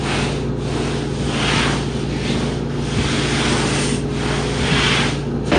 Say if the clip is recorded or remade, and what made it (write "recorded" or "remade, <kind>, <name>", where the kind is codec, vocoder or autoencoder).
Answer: recorded